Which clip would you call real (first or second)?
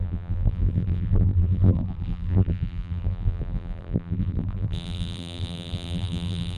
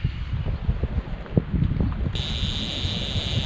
second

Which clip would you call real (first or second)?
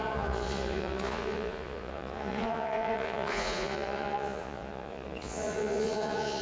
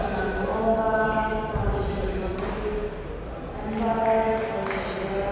second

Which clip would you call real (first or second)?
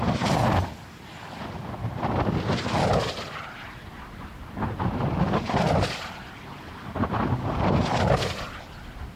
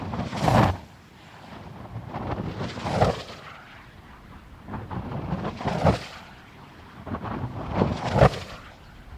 first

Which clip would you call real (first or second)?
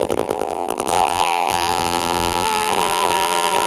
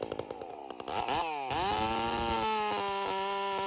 second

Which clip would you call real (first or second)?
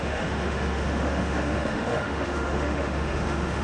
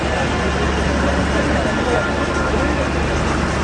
second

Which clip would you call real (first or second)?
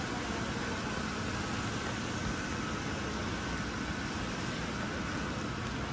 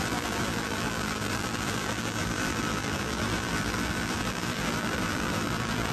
first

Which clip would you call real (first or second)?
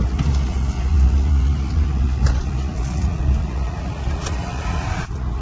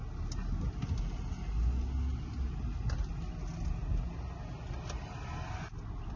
second